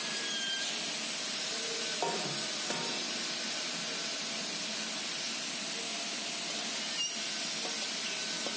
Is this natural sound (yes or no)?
yes